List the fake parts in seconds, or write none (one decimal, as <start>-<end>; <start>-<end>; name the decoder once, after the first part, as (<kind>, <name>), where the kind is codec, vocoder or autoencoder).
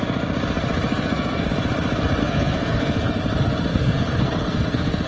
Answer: 0.9-1.5 (codec, SNAC); 2.2-3.2; 3.7-5.1